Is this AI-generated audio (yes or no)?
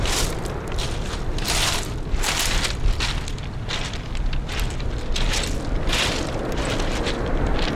no